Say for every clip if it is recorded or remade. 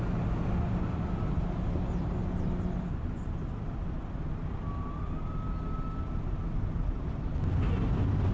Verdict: recorded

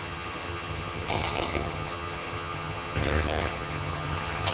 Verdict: remade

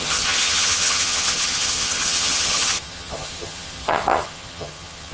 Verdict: remade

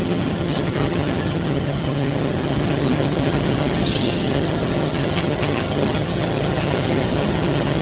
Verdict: remade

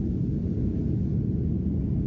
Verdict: recorded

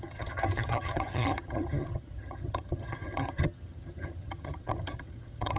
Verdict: remade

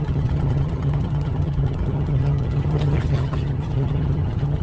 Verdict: remade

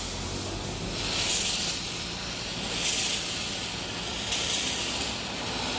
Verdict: recorded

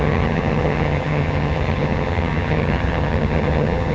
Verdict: remade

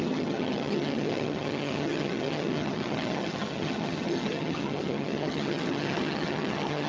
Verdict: remade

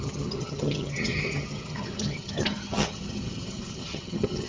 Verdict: remade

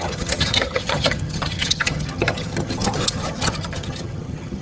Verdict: remade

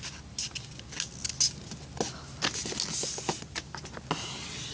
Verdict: recorded